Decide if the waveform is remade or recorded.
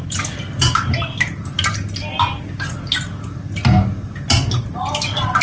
recorded